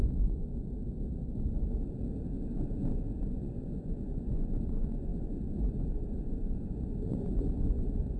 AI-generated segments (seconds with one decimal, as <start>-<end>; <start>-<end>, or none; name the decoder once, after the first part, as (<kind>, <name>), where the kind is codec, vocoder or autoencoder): 0.0-0.9 (vocoder, Vocos); 3.3-8.2